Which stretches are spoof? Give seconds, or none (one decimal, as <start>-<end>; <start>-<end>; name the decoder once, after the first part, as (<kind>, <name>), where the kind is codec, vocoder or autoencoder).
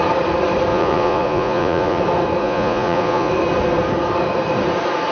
0.7-2.0 (vocoder, Vocos); 2.4-3.3